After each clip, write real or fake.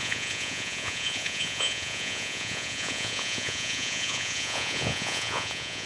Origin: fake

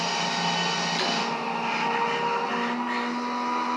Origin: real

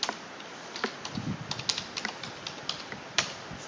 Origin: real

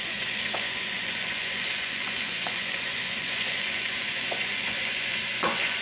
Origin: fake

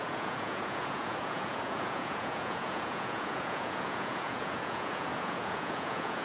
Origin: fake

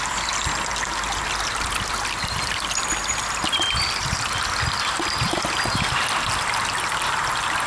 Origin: real